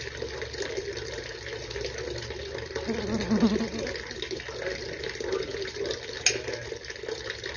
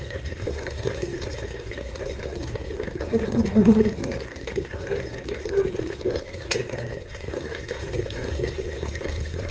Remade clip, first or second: second